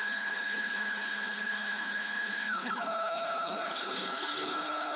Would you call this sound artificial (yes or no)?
yes